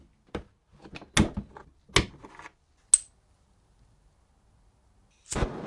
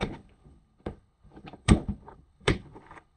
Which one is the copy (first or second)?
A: second